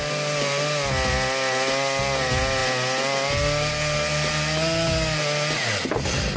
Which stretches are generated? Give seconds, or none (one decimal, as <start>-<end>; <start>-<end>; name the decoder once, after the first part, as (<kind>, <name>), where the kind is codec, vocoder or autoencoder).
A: none